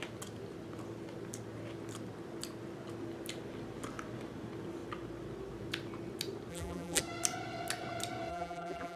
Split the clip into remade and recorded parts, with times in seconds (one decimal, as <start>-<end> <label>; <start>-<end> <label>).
0.0-6.5 recorded; 6.5-7.0 remade; 7.0-8.3 recorded; 8.3-9.0 remade